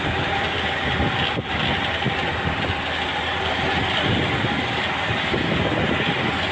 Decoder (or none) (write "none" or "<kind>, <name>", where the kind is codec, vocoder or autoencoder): none